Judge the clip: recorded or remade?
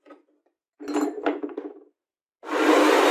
recorded